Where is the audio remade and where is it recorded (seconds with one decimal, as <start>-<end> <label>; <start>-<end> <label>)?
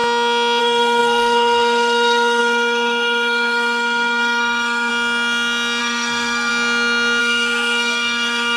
0.0-0.6 recorded; 0.6-4.9 remade; 4.9-5.8 recorded; 5.8-6.5 remade; 6.5-7.2 recorded; 7.2-8.6 remade